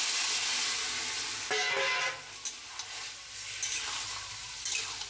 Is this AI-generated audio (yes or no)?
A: no